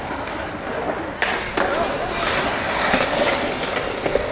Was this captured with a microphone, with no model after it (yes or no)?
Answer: yes